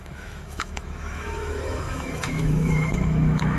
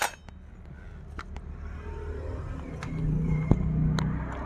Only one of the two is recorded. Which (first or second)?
second